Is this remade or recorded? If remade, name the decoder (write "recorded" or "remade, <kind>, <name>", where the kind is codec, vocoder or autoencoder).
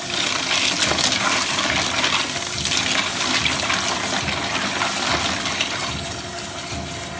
recorded